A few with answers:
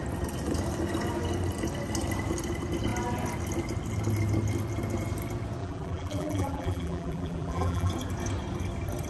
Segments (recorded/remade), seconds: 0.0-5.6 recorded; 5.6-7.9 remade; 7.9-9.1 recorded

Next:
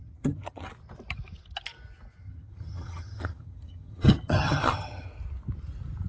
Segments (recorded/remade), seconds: 0.0-0.7 remade; 0.7-2.2 recorded; 2.2-5.1 remade; 5.1-6.1 recorded

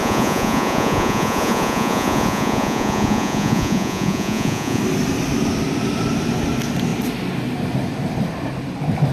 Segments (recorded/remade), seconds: 0.0-4.8 remade; 4.8-9.1 recorded

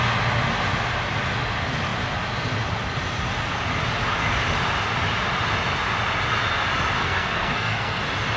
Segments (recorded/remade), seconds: 0.0-7.0 recorded; 7.0-8.0 remade; 8.0-8.4 recorded

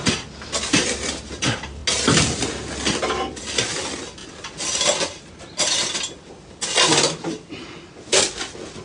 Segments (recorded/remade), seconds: 0.0-8.8 recorded

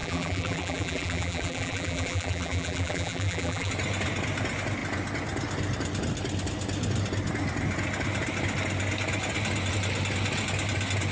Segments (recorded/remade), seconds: 0.0-3.7 remade; 3.7-11.1 recorded

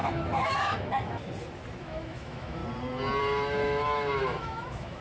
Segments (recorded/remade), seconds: 0.0-1.2 remade; 1.2-1.8 recorded; 1.8-2.6 remade; 2.6-3.2 recorded; 3.2-5.0 remade